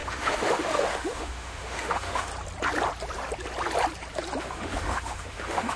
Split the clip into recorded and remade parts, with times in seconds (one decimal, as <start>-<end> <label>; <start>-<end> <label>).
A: 0.0-2.3 remade; 2.3-4.4 recorded; 4.4-5.8 remade